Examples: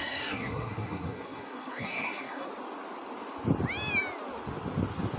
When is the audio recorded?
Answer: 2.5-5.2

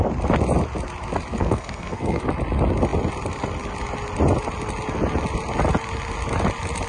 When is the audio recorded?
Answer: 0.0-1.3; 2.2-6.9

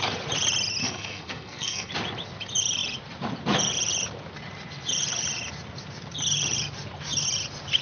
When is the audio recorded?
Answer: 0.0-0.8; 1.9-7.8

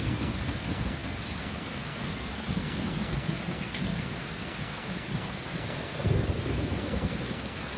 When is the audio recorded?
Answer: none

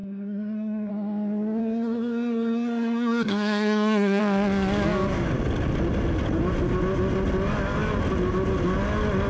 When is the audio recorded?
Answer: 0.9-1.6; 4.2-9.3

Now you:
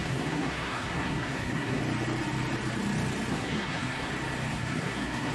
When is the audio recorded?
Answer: 1.8-3.3; 4.1-4.5